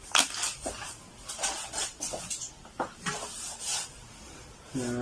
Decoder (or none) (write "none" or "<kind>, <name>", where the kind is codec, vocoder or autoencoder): none